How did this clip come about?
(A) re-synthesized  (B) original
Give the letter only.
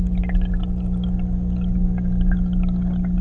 B